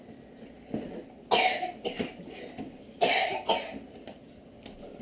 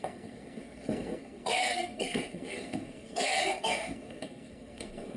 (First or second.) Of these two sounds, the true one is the first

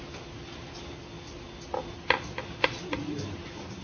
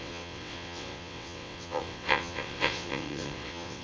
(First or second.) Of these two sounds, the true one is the first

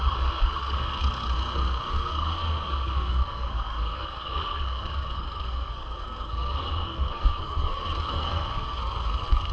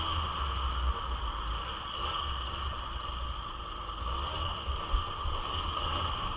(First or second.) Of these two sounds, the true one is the second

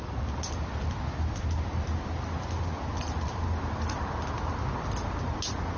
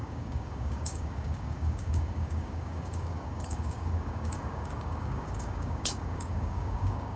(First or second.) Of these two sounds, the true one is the first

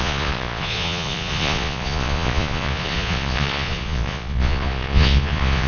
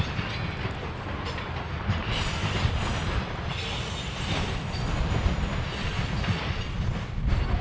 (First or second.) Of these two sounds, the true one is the second